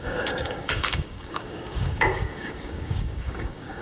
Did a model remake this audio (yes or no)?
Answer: yes